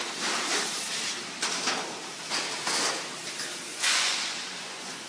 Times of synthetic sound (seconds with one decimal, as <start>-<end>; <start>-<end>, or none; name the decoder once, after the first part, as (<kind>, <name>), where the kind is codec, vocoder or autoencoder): 3.7-5.1 (vocoder, Vocos)